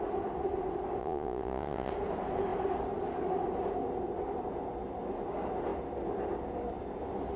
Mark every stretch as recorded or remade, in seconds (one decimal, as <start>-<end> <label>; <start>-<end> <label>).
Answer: 0.0-1.0 recorded; 1.0-1.9 remade; 1.9-7.4 recorded